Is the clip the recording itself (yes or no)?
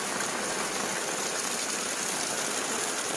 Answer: yes